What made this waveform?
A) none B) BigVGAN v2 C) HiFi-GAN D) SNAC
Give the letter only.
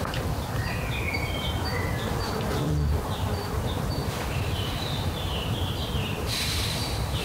B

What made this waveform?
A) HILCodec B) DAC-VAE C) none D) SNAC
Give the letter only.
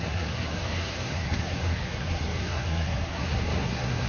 D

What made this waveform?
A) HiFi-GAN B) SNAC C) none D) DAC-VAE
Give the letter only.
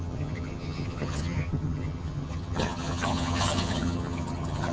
A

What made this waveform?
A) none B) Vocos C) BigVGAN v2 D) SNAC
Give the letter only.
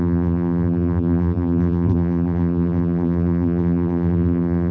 C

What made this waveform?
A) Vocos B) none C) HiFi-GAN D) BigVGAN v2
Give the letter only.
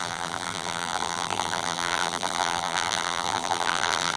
D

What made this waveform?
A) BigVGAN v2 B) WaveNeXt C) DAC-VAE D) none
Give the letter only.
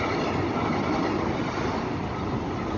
D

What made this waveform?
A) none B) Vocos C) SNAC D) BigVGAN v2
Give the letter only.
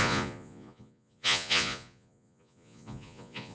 B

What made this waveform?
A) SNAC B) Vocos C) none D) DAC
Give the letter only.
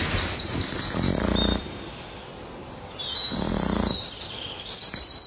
C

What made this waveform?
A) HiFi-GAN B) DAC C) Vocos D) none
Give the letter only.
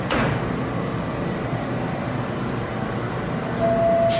D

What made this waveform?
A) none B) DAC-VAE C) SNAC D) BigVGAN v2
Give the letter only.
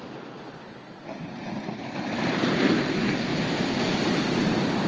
A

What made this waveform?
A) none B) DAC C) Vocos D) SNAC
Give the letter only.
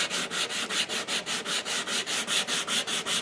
A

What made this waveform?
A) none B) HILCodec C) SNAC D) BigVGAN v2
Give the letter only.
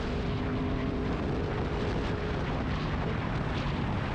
A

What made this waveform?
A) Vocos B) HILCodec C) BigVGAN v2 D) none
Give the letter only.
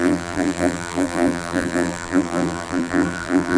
C